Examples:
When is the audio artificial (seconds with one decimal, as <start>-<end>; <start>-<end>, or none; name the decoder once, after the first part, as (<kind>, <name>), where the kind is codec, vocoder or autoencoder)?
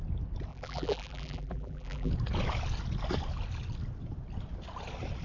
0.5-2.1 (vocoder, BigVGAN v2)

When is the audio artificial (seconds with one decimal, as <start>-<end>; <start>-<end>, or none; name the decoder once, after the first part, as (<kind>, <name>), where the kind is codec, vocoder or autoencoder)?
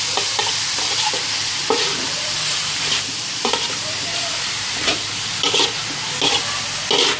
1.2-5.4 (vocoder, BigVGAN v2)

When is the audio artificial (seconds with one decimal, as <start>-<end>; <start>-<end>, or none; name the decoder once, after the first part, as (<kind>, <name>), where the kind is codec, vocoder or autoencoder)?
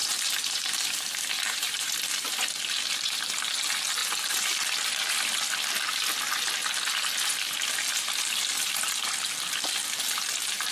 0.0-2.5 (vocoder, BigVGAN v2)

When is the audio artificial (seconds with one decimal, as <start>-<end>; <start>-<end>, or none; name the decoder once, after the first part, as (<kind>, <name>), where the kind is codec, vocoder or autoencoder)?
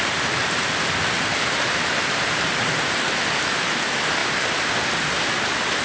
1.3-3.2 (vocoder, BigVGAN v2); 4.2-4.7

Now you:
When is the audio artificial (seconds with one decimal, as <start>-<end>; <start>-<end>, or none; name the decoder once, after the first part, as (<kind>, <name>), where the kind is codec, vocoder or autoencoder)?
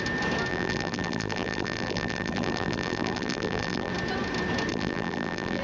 0.5-3.9 (vocoder, BigVGAN v2); 4.7-5.6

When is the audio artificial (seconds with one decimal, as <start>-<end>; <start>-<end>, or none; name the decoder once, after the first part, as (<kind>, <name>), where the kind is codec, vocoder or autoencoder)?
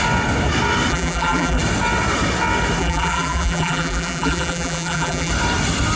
0.9-1.6 (vocoder, BigVGAN v2); 2.8-5.3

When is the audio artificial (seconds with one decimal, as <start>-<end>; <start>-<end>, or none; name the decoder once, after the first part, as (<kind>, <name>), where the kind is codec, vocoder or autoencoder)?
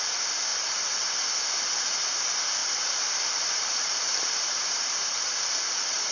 0.5-1.1 (vocoder, BigVGAN v2); 2.6-6.1